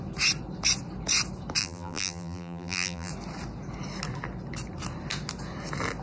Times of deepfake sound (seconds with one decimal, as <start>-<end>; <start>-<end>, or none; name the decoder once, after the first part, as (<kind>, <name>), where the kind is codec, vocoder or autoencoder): 1.6-3.1 (vocoder, BigVGAN v2)